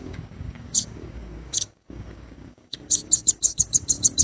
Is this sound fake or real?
fake